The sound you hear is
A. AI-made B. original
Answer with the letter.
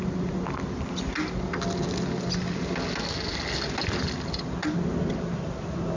B